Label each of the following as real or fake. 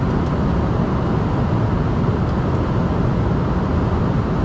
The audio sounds real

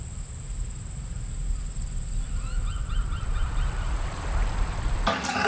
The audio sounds real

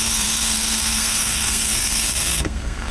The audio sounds fake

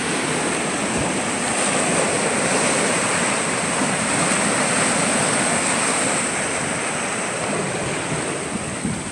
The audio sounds real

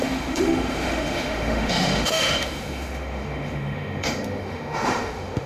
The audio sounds fake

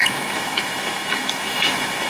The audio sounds fake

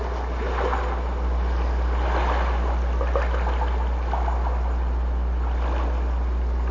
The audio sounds real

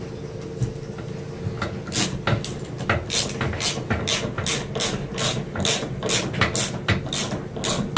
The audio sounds real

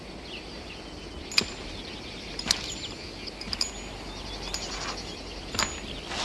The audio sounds real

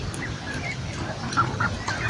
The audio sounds real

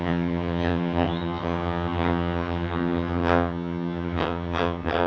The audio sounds fake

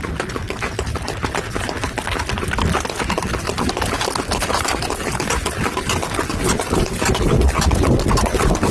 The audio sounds real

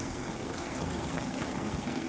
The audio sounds fake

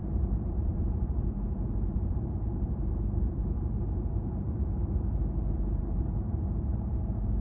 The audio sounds fake